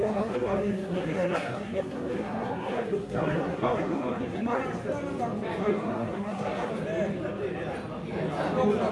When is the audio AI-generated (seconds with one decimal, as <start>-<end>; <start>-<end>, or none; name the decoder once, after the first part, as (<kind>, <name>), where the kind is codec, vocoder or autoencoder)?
0.0-4.6 (codec, SNAC); 5.6-6.7

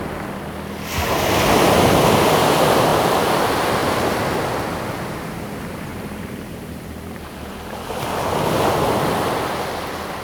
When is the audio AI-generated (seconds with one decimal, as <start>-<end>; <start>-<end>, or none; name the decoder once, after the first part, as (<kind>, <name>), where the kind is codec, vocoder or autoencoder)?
2.9-3.4 (vocoder, BigVGAN v2); 3.8-4.4; 5.9-7.9